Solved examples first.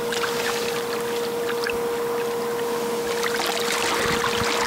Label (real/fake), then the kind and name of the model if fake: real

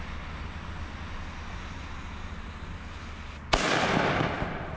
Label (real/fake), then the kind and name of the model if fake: real